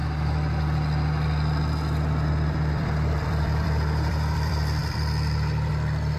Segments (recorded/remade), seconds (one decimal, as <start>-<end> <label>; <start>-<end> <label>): 0.0-2.3 recorded; 2.3-6.2 remade